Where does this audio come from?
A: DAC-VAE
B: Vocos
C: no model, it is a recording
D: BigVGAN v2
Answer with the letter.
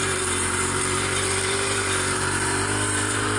D